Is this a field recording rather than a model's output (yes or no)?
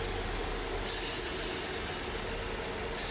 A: yes